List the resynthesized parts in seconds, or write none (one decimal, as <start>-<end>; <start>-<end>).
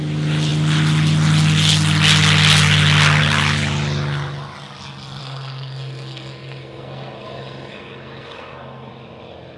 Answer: 5.2-8.9